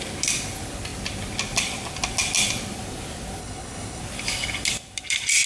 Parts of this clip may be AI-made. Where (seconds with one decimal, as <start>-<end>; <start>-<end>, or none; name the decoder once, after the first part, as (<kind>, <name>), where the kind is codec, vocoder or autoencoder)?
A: 3.4-4.0 (codec, HILCodec)